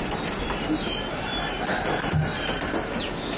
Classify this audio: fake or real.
real